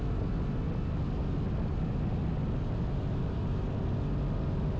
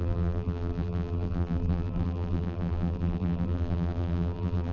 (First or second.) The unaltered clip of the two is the first